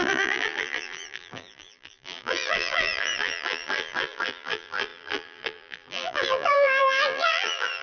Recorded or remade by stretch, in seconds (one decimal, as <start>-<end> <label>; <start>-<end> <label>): 0.0-7.8 remade